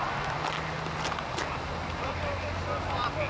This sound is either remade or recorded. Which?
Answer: recorded